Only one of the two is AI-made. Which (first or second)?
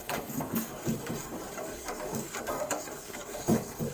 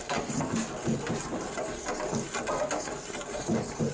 first